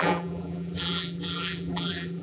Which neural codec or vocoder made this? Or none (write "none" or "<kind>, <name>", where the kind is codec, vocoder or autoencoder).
vocoder, BigVGAN v2